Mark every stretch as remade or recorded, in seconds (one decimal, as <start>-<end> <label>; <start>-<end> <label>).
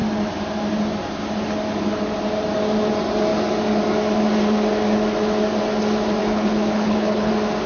0.0-6.2 recorded; 6.2-7.3 remade; 7.3-7.7 recorded